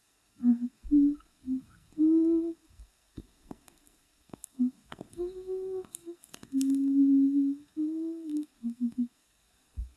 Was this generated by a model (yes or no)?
yes